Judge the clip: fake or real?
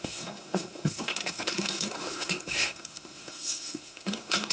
fake